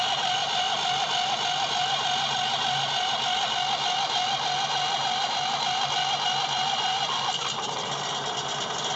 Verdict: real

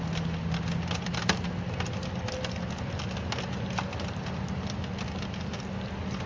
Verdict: real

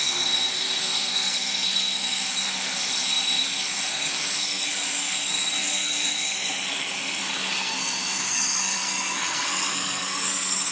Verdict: fake